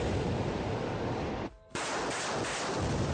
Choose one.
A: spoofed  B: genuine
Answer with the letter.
B